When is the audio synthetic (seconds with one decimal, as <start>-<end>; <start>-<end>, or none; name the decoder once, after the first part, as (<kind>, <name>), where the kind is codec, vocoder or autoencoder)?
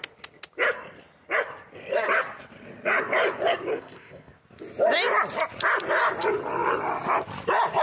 3.7-4.3 (codec, ZipCodec)